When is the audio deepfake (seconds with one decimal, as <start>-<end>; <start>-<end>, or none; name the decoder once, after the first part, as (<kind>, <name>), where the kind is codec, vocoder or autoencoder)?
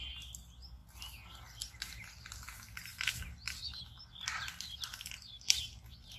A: none